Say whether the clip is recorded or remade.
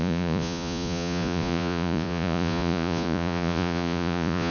remade